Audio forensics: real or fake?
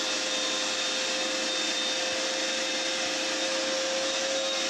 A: real